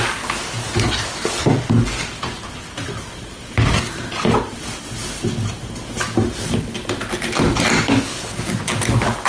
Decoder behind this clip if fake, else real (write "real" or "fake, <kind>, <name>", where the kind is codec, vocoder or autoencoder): real